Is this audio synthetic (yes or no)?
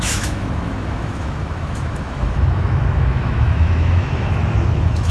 yes